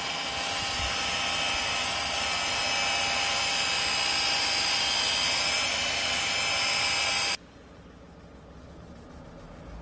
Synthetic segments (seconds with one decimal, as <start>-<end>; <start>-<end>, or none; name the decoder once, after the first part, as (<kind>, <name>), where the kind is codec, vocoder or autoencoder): none